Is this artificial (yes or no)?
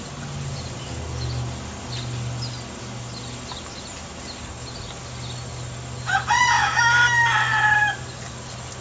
no